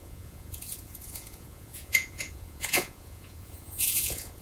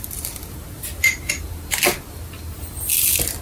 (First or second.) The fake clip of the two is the first